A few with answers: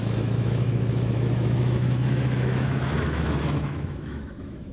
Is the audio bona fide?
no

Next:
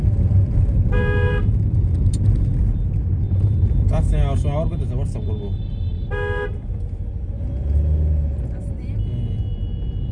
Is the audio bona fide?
yes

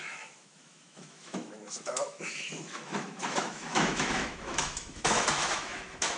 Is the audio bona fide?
no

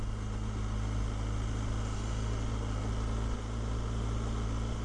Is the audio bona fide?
yes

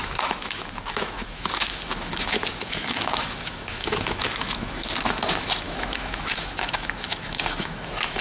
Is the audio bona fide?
no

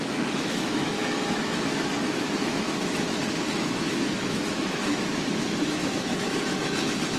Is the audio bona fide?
no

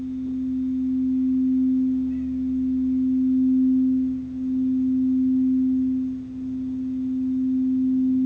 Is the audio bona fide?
yes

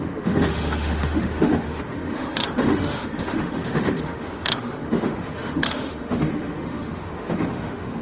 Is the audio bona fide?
no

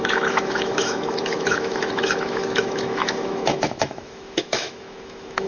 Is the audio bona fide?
no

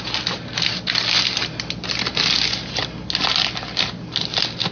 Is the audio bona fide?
yes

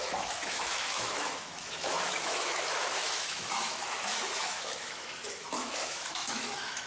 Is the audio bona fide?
no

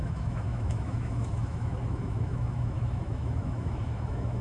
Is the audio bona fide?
no